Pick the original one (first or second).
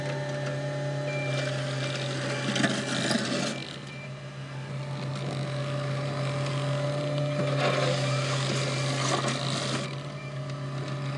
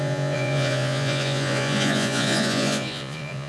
first